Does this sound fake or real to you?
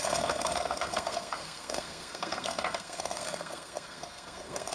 fake